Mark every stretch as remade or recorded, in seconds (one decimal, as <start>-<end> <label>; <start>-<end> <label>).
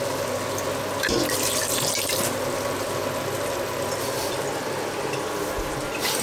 0.0-6.2 recorded